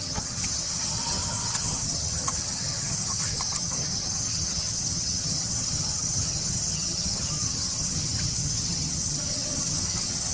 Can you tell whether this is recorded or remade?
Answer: remade